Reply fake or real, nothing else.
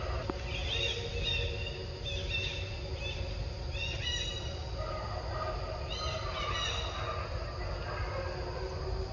real